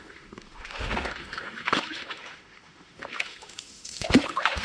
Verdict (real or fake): fake